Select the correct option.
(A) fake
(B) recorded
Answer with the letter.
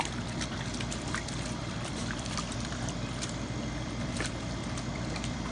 A